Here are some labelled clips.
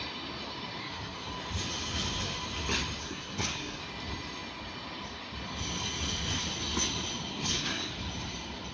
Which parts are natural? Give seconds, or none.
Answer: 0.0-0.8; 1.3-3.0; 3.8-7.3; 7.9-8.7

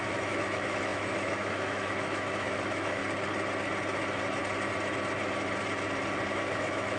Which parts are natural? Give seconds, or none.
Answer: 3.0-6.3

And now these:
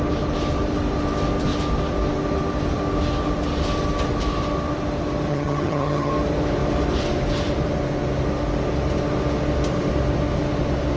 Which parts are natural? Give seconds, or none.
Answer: 0.0-5.3; 6.1-11.0